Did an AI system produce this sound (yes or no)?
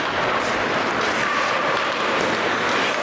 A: no